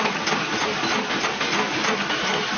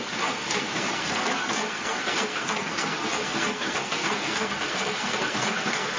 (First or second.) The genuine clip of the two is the first